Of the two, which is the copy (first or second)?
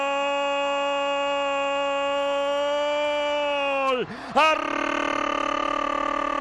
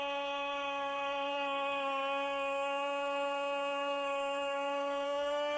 second